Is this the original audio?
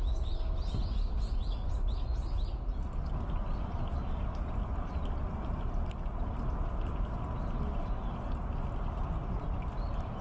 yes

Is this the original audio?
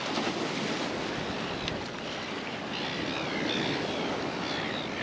yes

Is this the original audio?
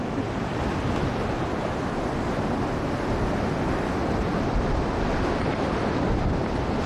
yes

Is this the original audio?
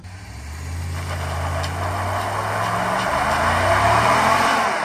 yes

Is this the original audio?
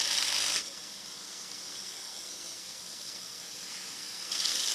no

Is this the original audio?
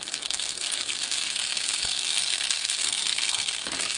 no